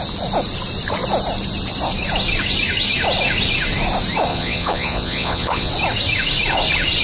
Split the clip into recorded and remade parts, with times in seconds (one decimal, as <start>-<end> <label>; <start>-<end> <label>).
0.0-4.3 recorded; 4.3-5.7 remade; 5.7-7.0 recorded